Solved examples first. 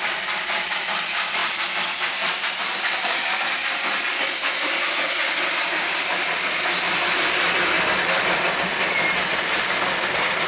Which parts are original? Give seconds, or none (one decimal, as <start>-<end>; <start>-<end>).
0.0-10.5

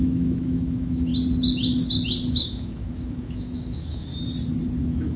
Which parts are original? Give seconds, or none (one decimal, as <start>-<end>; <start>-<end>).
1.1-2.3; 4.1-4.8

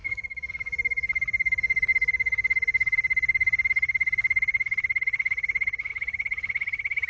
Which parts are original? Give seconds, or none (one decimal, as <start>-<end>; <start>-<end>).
0.5-7.1